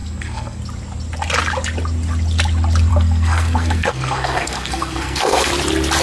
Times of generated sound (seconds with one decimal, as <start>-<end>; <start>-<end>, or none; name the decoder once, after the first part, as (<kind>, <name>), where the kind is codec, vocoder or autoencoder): 0.0-0.6 (codec, SNAC); 2.9-5.5